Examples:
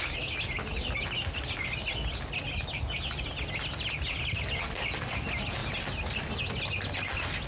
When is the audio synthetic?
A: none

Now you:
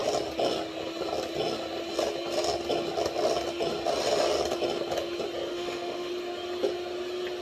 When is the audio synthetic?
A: 5.5-6.1 (autoencoder, DAC-VAE)